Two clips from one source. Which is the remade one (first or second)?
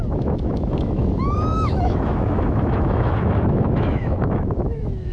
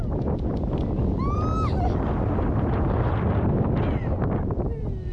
first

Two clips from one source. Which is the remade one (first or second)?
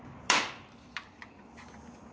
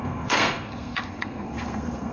second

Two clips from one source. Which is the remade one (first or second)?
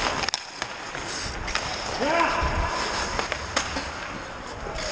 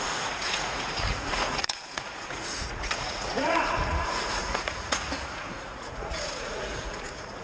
second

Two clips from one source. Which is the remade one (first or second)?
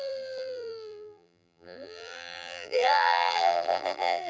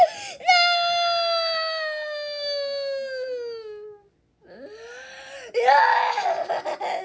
first